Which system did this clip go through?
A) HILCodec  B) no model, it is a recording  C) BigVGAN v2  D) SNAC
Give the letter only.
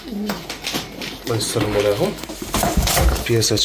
C